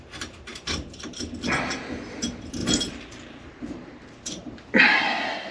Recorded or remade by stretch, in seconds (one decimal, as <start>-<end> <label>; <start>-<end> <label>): 0.0-2.6 recorded; 2.6-4.8 remade; 4.8-5.5 recorded